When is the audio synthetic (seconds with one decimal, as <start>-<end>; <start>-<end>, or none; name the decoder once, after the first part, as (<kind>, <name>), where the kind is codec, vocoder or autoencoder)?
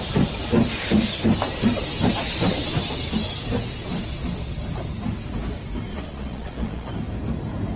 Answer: 5.9-6.9 (vocoder, Vocos)